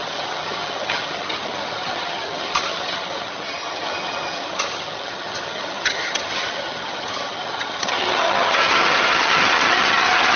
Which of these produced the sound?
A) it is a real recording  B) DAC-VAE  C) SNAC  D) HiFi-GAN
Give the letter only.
D